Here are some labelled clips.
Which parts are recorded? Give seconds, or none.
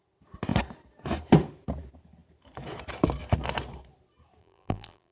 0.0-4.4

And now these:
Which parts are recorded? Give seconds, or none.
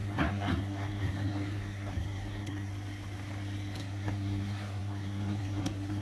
2.7-3.8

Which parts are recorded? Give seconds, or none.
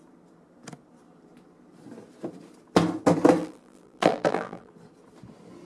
0.0-3.4; 4.7-5.7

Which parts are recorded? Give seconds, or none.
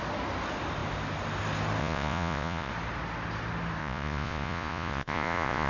0.0-1.8; 2.7-3.8